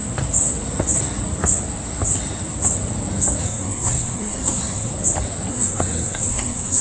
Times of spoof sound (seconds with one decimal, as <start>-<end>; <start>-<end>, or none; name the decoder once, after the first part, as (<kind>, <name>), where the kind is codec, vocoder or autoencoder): 3.4-4.9 (codec, SNAC); 5.5-6.8